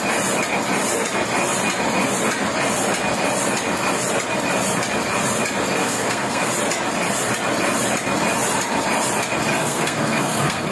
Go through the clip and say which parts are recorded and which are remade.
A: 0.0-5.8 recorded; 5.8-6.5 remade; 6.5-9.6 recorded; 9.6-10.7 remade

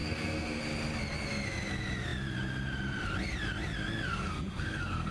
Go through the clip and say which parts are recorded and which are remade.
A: 0.0-0.6 remade; 0.6-4.1 recorded; 4.1-5.1 remade

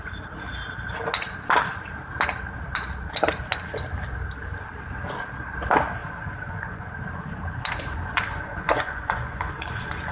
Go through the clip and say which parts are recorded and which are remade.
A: 0.0-6.0 recorded; 6.0-6.9 remade; 6.9-7.9 recorded; 7.9-10.1 remade

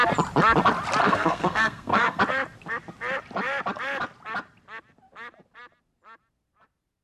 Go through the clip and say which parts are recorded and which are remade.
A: 0.0-1.0 recorded; 1.0-2.2 remade; 2.2-7.0 recorded

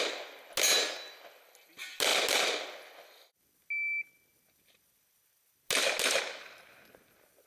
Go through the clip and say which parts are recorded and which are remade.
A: 0.0-7.5 recorded

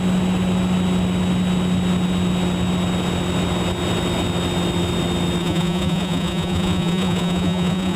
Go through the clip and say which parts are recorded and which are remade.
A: 0.0-5.4 recorded; 5.4-8.0 remade